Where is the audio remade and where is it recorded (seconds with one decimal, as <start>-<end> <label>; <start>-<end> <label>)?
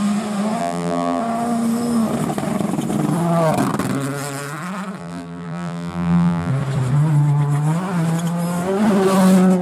0.0-0.6 recorded; 0.6-1.2 remade; 1.2-5.0 recorded; 5.0-6.5 remade; 6.5-9.6 recorded